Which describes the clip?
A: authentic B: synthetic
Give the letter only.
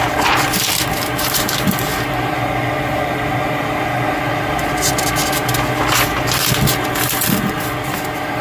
A